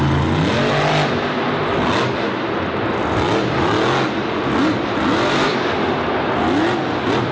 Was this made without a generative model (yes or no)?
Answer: yes